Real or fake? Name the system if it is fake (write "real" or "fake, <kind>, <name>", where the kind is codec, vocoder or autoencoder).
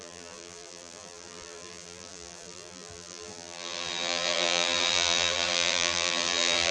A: fake, vocoder, BigVGAN v2